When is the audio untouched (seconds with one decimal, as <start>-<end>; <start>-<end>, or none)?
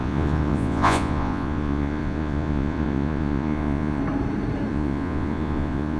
4.0-4.7